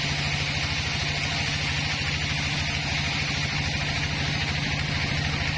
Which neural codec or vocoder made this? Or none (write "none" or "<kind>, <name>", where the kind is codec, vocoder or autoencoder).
none